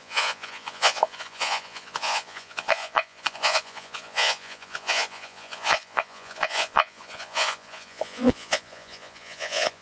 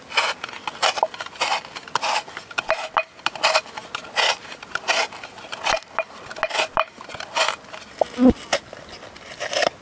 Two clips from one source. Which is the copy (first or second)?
first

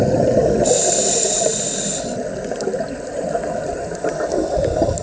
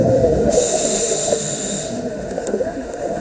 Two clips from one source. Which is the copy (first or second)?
second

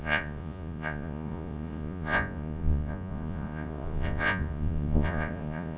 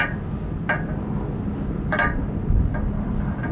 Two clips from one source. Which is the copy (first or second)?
first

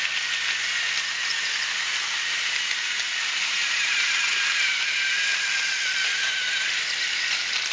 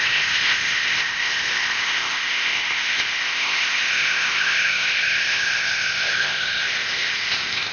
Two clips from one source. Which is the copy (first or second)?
second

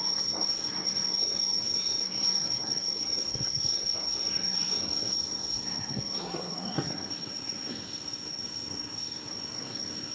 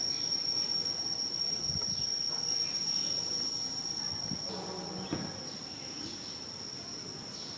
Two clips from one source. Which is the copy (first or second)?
first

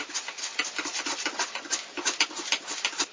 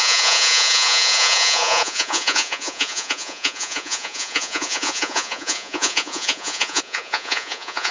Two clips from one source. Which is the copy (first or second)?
second